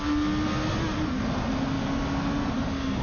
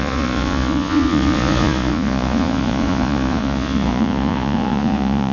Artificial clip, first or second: second